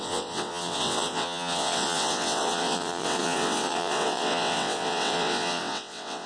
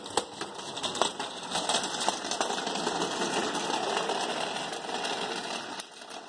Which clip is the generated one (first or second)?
first